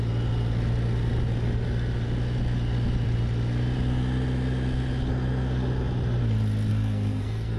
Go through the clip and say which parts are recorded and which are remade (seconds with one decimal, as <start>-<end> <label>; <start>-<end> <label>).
0.0-6.7 recorded; 6.7-7.6 remade